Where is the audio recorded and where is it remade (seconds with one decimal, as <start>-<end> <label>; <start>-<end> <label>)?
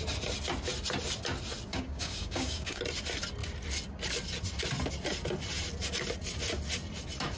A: 0.0-1.7 recorded; 1.7-2.8 remade; 2.8-7.4 recorded